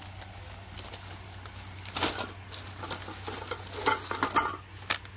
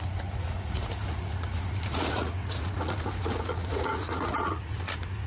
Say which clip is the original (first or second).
first